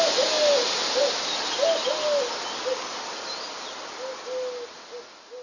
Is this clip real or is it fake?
real